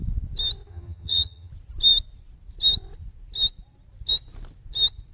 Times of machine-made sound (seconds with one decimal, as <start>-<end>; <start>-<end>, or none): 0.7-1.5